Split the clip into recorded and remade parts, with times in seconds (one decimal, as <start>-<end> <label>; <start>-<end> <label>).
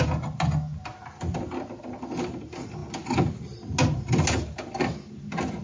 0.0-5.6 recorded